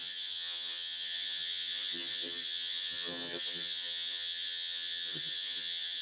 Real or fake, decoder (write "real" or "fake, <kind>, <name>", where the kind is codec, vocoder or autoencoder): fake, vocoder, HiFi-GAN